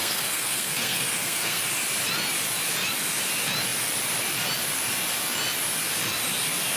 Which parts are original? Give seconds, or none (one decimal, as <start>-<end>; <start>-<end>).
1.6-6.8